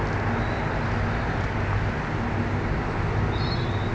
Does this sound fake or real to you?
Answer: real